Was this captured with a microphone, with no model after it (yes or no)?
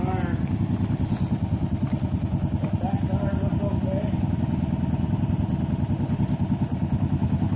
yes